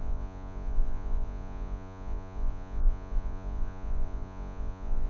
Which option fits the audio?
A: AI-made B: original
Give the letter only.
A